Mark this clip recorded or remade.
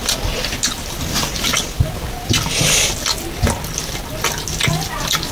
recorded